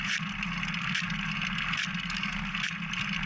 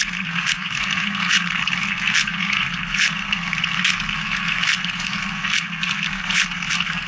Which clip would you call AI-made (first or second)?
second